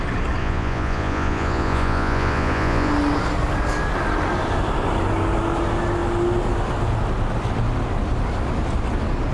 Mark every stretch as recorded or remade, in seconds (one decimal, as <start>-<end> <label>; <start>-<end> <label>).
0.0-0.4 recorded; 0.4-2.9 remade; 2.9-9.3 recorded

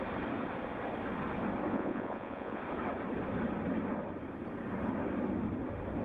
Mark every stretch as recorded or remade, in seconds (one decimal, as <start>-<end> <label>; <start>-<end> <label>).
0.0-1.7 recorded; 1.7-2.6 remade; 2.6-6.0 recorded

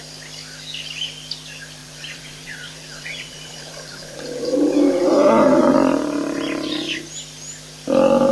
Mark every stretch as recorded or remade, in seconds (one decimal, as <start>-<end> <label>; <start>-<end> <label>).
0.0-1.8 recorded; 1.8-5.1 remade; 5.1-8.3 recorded

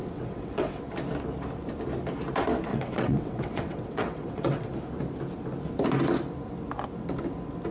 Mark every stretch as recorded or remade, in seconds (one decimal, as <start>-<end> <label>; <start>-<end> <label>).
0.0-0.8 remade; 0.8-2.7 recorded; 2.7-4.7 remade; 4.7-7.7 recorded

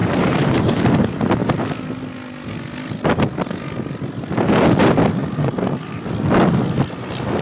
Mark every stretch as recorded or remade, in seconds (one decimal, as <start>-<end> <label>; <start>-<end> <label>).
0.0-0.6 remade; 0.6-5.2 recorded; 5.2-6.1 remade; 6.1-7.4 recorded

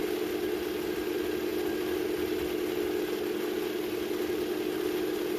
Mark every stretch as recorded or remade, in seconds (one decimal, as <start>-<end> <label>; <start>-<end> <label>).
0.0-5.4 recorded

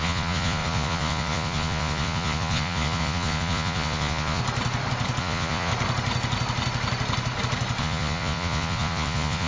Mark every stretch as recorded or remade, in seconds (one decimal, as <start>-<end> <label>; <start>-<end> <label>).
0.0-4.4 remade; 4.4-5.2 recorded; 5.2-5.7 remade; 5.7-7.8 recorded; 7.8-9.5 remade

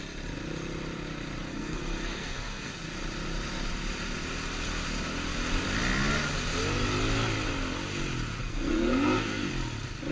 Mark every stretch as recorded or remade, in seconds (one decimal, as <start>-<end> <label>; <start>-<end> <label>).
0.0-1.5 recorded; 1.5-2.7 remade; 2.7-8.4 recorded; 8.4-9.5 remade; 9.5-10.1 recorded